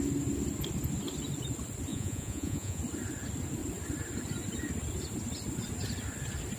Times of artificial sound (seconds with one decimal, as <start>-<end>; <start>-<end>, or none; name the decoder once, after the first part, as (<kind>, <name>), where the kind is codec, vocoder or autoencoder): 1.9-2.8 (vocoder, Vocos)